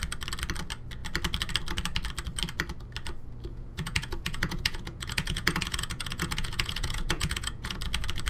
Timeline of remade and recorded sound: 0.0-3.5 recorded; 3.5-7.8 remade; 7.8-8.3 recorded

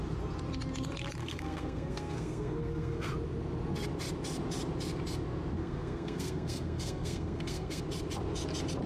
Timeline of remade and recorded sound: 0.0-1.2 recorded; 1.2-3.1 remade; 3.1-5.6 recorded; 5.6-7.8 remade; 7.8-8.9 recorded

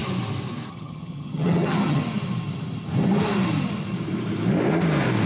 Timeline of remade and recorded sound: 0.0-0.7 recorded; 0.7-2.0 remade; 2.0-5.3 recorded

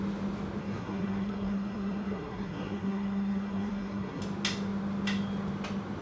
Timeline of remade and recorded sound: 0.0-0.6 recorded; 0.6-4.2 remade; 4.2-6.0 recorded

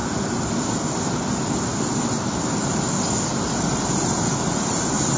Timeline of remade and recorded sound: 0.0-5.2 recorded

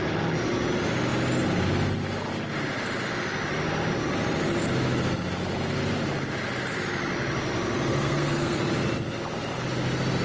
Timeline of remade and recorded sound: 0.0-7.9 recorded; 7.9-8.6 remade; 8.6-10.2 recorded

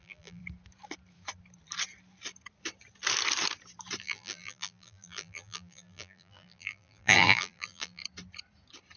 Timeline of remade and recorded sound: 0.0-0.4 remade; 0.4-4.0 recorded; 4.0-8.0 remade; 8.0-9.0 recorded